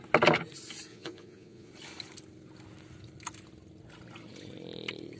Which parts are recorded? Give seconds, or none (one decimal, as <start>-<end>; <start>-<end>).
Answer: 0.0-0.9; 1.7-5.2